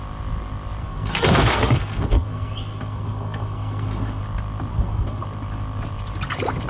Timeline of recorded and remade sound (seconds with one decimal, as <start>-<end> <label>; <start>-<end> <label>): 0.0-0.8 recorded; 0.8-4.2 remade; 4.2-4.7 recorded; 4.7-5.2 remade; 5.2-6.7 recorded